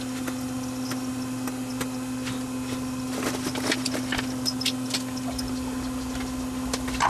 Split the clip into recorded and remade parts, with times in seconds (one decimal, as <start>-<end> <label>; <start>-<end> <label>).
0.0-7.1 recorded